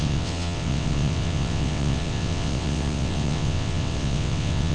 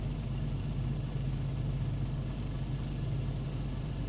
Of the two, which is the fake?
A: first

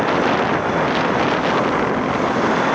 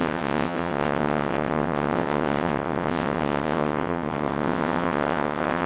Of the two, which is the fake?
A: second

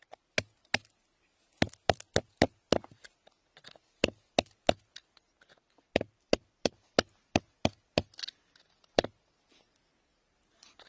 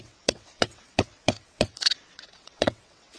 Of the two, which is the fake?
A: second